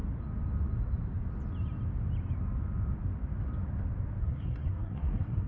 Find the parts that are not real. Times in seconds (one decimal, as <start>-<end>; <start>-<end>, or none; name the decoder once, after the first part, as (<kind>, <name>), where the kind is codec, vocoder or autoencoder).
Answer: 4.2-5.5 (codec, SNAC)